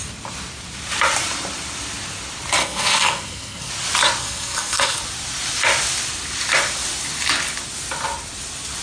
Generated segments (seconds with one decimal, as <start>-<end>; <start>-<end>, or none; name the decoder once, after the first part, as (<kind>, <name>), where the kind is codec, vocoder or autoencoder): 2.6-3.7 (codec, SNAC); 4.2-5.0